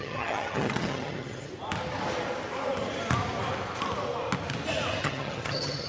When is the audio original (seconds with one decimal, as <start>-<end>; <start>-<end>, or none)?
1.5-5.0